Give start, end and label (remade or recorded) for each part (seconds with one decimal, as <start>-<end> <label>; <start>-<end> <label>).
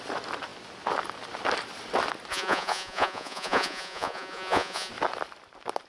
0.0-2.3 recorded; 2.3-4.9 remade; 4.9-5.9 recorded